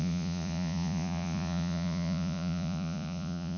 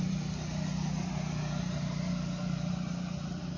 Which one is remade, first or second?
first